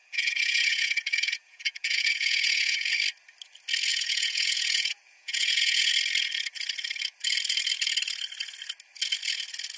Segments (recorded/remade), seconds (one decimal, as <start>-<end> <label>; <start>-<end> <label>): 0.0-3.0 remade; 3.0-3.9 recorded; 3.9-5.9 remade; 5.9-9.8 recorded

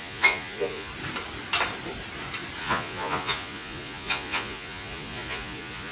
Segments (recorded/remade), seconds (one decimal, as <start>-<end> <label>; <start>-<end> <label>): 0.0-0.9 remade; 0.9-2.6 recorded; 2.6-5.9 remade

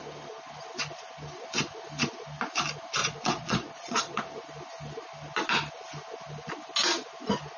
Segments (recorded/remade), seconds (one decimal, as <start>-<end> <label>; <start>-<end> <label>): 0.0-3.0 recorded; 3.0-4.2 remade; 4.2-7.6 recorded

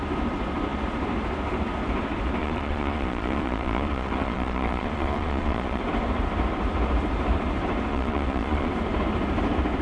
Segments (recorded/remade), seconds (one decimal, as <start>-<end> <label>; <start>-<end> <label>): 0.0-2.4 recorded; 2.4-5.8 remade; 5.8-7.9 recorded; 7.9-8.7 remade; 8.7-9.8 recorded